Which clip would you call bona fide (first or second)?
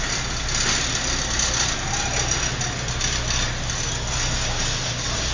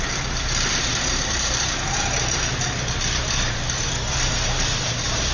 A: first